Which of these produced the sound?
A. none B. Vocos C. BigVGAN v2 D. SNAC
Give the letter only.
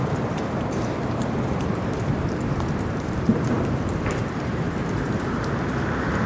C